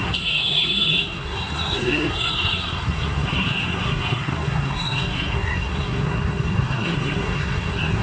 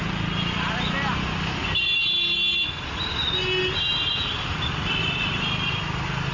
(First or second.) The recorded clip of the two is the second